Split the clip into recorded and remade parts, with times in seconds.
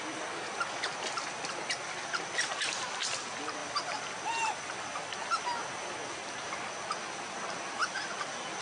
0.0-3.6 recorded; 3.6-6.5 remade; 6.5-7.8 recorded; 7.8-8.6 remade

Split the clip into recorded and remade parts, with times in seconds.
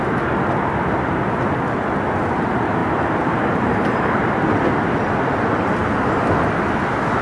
0.0-2.8 recorded; 2.8-4.3 remade; 4.3-7.2 recorded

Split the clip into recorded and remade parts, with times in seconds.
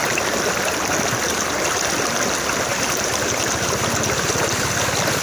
0.0-2.7 recorded; 2.7-4.3 remade; 4.3-5.2 recorded